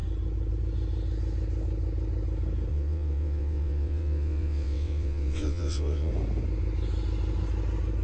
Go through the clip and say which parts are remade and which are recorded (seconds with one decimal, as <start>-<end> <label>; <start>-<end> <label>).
0.0-2.7 recorded; 2.7-6.1 remade; 6.1-8.0 recorded